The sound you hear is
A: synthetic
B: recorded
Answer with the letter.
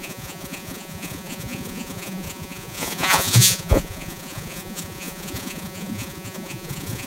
A